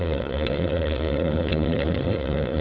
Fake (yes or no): yes